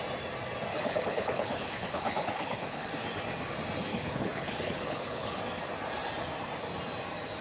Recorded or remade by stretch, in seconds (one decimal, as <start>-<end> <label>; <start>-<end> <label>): 0.0-0.7 recorded; 0.7-2.9 remade; 2.9-3.9 recorded; 3.9-5.4 remade; 5.4-7.4 recorded